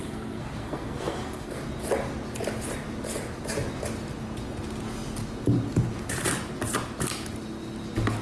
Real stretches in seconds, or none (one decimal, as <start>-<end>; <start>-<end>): 1.6-8.2